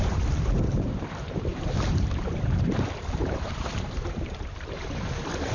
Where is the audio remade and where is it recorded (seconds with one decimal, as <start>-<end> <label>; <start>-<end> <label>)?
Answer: 0.0-5.5 remade